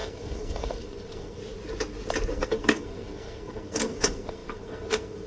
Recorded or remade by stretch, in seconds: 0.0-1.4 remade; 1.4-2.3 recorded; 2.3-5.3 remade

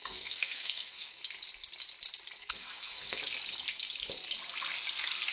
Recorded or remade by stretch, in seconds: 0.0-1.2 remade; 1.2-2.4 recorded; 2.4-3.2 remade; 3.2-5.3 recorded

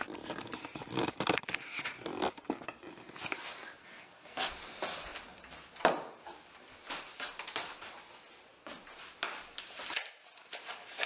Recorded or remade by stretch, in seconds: 0.0-3.8 recorded; 3.8-4.5 remade; 4.5-11.1 recorded